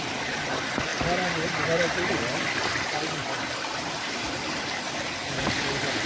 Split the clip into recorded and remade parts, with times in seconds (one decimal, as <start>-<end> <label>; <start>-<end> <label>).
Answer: 0.0-6.1 recorded